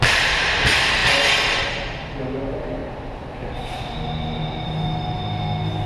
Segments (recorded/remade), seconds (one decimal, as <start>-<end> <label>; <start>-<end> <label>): 0.0-5.9 recorded